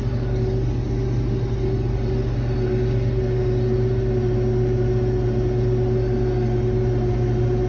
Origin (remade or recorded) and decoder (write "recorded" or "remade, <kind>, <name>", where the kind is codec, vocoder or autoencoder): recorded